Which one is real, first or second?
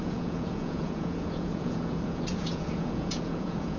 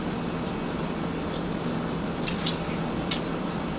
second